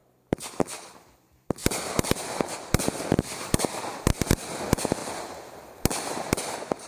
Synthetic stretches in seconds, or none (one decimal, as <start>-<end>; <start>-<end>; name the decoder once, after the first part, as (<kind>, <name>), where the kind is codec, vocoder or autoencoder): 0.0-0.5 (vocoder, BigVGAN v2); 1.6-3.6